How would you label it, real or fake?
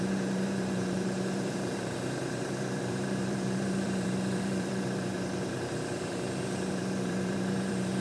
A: fake